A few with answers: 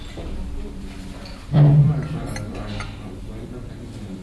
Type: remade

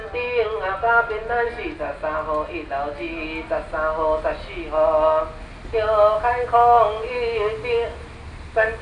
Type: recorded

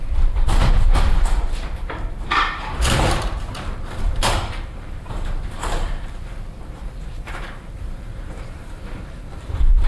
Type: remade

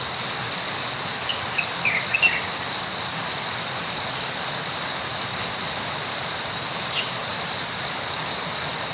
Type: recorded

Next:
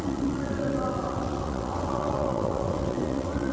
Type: remade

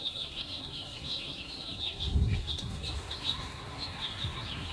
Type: remade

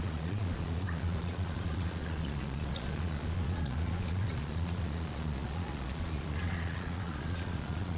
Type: remade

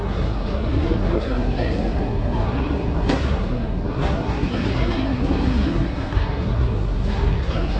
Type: remade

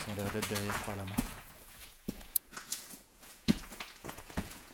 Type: remade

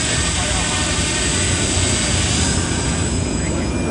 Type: recorded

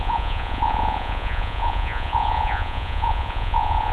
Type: remade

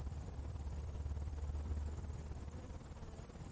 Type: remade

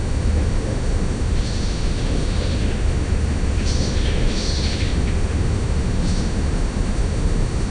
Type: remade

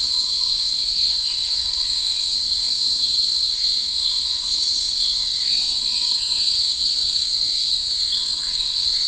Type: remade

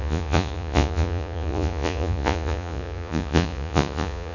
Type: remade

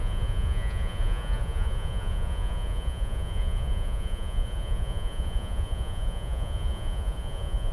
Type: remade